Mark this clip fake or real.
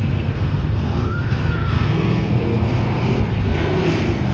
fake